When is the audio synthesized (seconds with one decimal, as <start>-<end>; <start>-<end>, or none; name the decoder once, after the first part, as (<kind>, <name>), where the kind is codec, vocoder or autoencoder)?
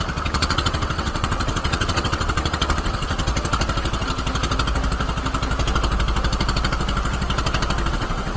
0.0-3.3 (vocoder, WaveNeXt); 7.9-8.4